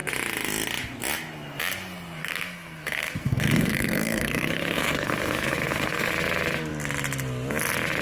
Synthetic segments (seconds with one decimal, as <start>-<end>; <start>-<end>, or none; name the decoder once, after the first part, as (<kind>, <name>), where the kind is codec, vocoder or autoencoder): 2.2-6.1 (codec, SNAC)